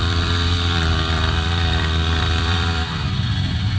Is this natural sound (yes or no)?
no